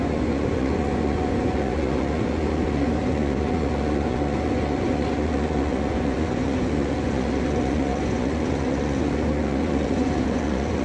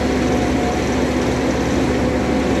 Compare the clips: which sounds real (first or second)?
second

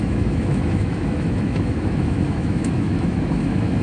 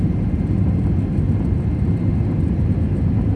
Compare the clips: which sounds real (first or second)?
second